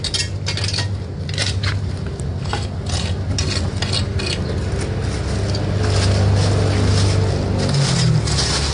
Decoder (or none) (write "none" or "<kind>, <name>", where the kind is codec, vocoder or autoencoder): none